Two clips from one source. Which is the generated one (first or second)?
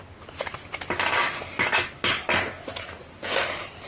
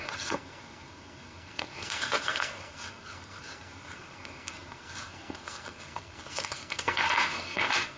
second